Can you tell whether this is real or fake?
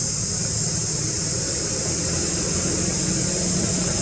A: real